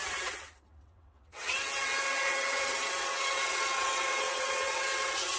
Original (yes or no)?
no